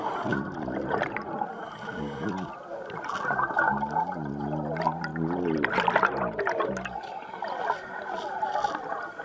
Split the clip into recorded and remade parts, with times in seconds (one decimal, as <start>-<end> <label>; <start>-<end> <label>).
0.0-9.2 recorded